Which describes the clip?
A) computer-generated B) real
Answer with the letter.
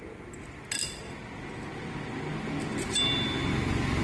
B